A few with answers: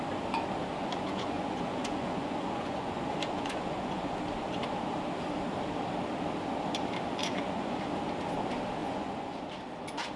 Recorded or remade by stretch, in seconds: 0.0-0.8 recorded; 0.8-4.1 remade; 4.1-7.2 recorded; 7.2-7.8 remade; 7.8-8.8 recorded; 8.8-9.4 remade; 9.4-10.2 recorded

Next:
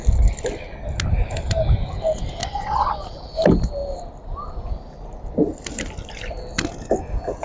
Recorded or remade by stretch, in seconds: 0.0-2.4 recorded; 2.4-2.9 remade; 2.9-7.4 recorded

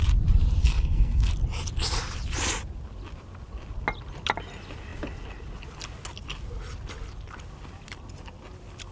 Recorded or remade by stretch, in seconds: 0.0-0.6 recorded; 0.6-1.3 remade; 1.3-8.9 recorded

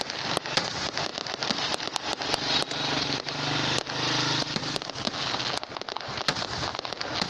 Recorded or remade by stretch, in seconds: 0.0-7.3 recorded

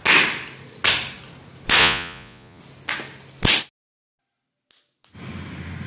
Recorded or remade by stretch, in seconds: 0.0-1.8 recorded; 1.8-2.6 remade; 2.6-5.9 recorded

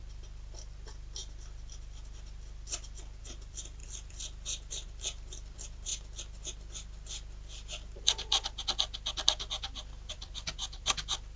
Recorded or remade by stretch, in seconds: 0.0-3.2 recorded; 3.2-5.9 remade; 5.9-10.1 recorded; 10.1-11.4 remade